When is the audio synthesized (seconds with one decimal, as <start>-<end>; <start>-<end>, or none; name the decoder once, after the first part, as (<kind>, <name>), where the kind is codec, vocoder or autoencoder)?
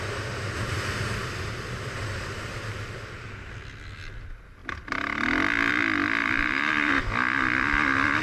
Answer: 2.5-3.5 (vocoder, BigVGAN v2); 6.2-7.0